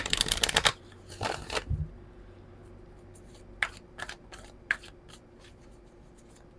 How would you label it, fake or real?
real